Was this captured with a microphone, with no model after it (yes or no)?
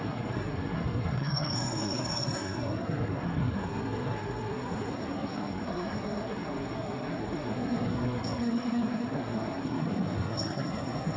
no